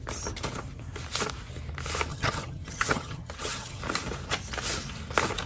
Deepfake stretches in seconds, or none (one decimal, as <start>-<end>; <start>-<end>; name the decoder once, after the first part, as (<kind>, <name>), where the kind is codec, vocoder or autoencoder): 2.1-3.8 (vocoder, HiFi-GAN)